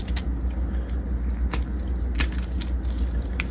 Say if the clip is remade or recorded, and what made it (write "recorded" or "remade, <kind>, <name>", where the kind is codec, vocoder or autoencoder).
recorded